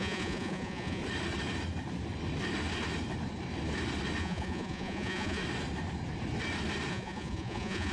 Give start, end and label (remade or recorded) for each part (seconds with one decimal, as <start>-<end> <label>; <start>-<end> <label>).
0.0-1.0 remade; 1.0-4.2 recorded; 4.2-5.4 remade; 5.4-6.9 recorded; 6.9-7.9 remade